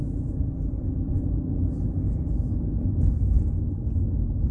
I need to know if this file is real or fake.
real